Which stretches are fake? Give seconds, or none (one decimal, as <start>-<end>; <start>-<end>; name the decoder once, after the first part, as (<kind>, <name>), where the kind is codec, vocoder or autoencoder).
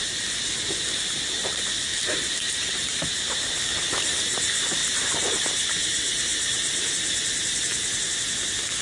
1.9-3.6 (vocoder, BigVGAN v2); 4.8-6.9